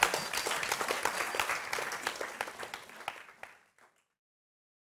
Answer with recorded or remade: recorded